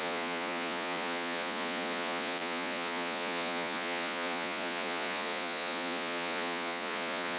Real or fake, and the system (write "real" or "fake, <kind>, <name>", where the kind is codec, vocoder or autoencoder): fake, vocoder, Vocos